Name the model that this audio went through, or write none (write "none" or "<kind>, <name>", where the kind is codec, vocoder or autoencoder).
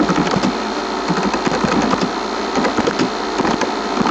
none